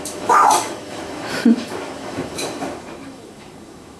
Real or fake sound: fake